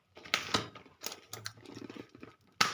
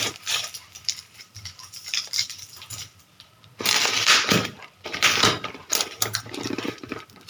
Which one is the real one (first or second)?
first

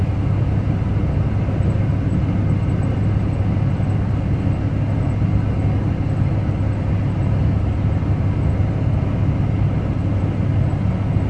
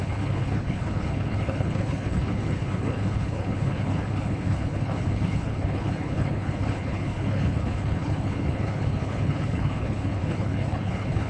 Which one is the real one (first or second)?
first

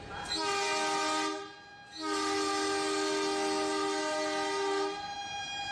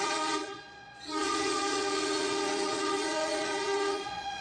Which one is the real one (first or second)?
first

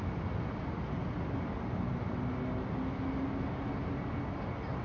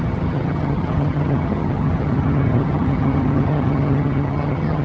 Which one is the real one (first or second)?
first